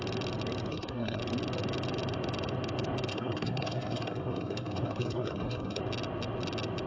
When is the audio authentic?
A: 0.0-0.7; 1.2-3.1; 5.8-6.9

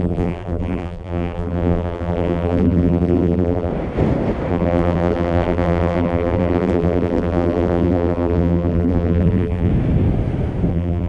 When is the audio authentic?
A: 3.7-4.5; 9.7-10.7

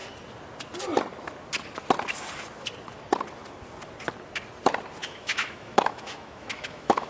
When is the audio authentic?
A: 0.0-5.0